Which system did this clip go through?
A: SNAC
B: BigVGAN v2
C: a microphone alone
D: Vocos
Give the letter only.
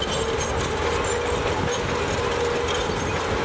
C